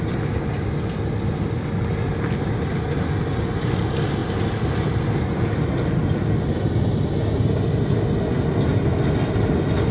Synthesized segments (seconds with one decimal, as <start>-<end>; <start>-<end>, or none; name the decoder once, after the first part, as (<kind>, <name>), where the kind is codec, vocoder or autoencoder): none